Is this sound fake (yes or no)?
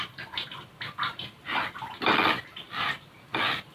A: no